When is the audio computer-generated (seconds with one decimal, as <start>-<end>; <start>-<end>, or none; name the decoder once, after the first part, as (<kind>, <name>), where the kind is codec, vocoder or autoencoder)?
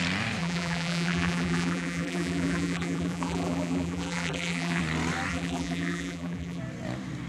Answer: 0.4-4.8 (vocoder, BigVGAN v2); 5.3-6.6